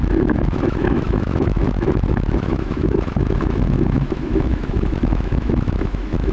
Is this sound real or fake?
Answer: fake